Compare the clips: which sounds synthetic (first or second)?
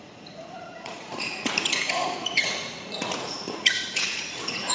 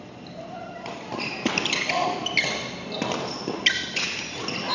first